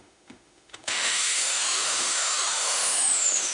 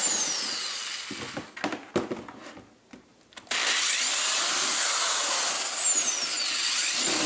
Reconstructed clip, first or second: first